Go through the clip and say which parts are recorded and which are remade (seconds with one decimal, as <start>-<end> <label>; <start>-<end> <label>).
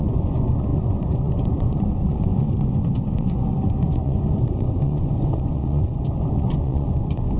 0.0-7.4 remade